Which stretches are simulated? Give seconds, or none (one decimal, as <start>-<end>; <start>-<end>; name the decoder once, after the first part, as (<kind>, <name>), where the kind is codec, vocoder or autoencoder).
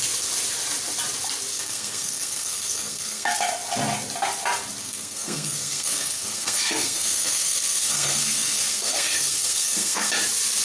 1.5-3.5 (codec, SNAC); 4.8-10.1